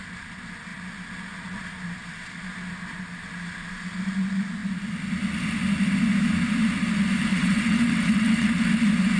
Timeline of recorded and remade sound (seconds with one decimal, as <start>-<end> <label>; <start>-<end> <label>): 0.0-7.3 recorded; 7.3-8.5 remade; 8.5-9.2 recorded

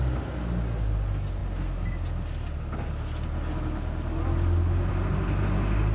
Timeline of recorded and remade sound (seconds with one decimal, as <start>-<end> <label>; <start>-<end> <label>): 0.0-5.9 recorded